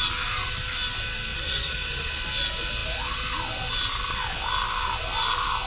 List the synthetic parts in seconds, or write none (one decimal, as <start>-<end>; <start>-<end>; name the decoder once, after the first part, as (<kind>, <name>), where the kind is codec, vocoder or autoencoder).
1.3-2.2 (vocoder, Vocos)